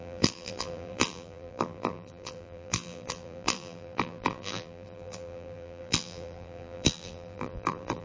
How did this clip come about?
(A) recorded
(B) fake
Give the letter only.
B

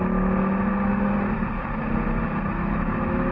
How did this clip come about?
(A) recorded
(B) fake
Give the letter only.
A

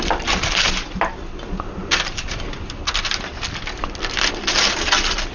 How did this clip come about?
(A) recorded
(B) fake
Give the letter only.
A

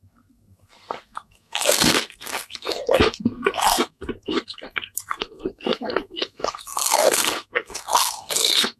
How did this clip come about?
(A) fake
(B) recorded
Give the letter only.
A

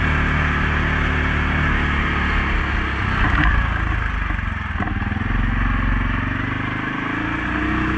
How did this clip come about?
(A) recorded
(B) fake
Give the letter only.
A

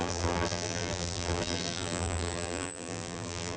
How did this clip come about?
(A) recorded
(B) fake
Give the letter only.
B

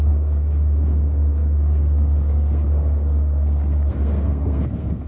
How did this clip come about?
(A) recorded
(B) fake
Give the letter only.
B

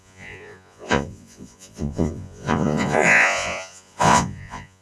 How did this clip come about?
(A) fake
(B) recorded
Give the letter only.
A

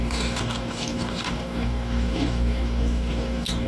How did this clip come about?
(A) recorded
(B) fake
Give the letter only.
B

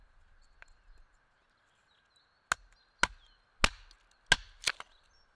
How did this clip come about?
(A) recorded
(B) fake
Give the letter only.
A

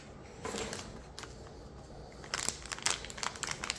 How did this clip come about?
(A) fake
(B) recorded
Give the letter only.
B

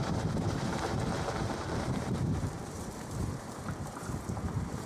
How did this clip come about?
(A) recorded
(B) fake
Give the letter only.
B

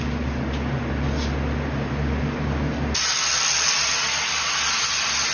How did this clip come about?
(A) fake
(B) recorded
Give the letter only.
B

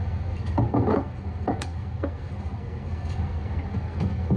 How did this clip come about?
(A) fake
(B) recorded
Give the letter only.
A